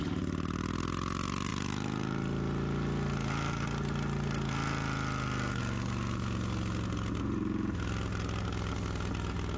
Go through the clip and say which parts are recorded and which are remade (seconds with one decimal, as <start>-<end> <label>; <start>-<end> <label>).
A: 0.0-9.6 recorded